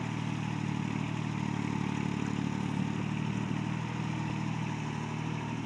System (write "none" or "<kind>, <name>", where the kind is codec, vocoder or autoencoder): none